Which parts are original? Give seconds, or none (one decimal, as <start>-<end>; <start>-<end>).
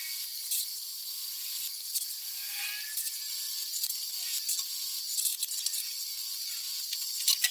0.0-5.3; 6.7-7.5